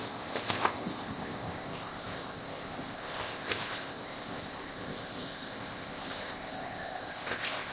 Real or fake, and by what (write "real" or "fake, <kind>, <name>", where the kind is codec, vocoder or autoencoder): fake, codec, ZipCodec